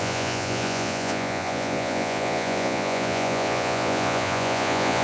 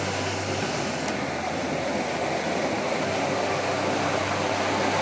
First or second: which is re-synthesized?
first